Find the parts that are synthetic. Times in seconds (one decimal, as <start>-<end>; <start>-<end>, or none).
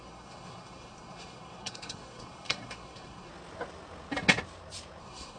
0.0-3.3; 5.0-5.4